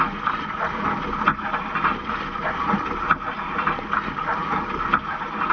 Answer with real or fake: real